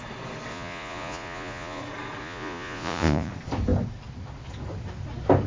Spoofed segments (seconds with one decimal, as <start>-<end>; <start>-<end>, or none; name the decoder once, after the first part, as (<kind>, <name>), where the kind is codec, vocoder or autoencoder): 0.5-1.8 (vocoder, Vocos); 2.2-3.3